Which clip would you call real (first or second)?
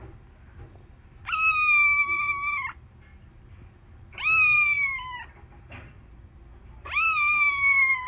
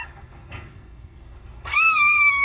first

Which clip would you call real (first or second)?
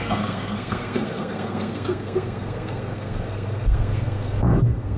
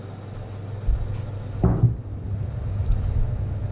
second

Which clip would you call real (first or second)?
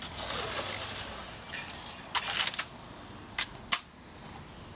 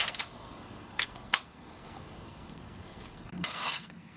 first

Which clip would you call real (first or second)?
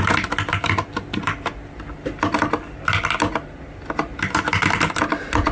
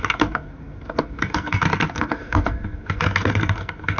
first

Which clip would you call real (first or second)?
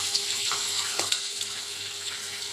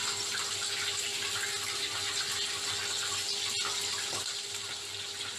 second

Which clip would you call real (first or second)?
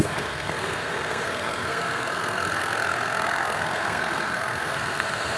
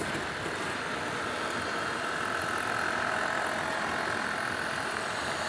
second